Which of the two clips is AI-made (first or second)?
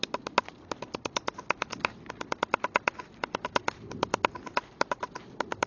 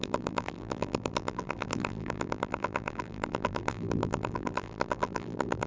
second